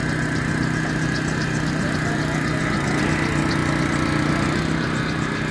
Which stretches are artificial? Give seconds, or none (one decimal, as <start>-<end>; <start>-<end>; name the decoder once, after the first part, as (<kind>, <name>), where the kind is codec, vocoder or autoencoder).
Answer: none